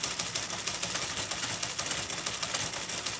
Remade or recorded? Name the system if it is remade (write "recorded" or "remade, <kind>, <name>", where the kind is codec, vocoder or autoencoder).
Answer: recorded